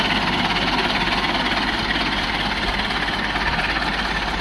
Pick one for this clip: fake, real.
real